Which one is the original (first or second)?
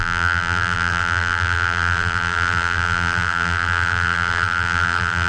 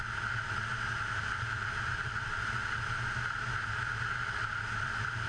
second